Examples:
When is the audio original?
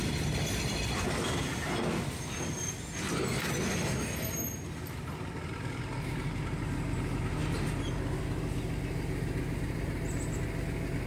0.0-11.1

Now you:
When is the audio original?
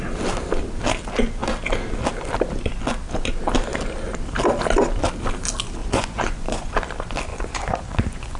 0.0-5.8; 6.7-7.3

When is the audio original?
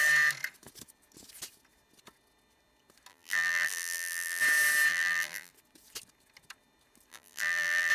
0.0-3.1; 4.4-4.9; 5.5-7.1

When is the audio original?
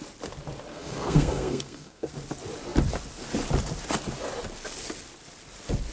0.0-0.7; 2.1-5.9